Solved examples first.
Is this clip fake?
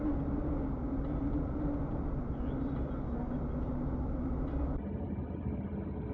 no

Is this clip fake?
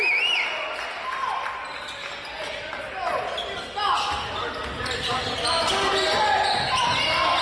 no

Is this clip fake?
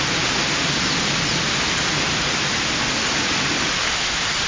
no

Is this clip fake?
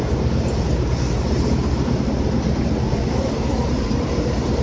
yes